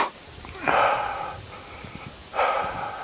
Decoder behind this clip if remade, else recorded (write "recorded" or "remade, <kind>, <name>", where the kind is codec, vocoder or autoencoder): recorded